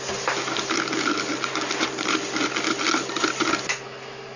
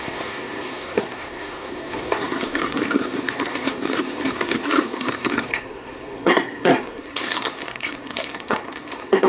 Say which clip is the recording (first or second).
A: first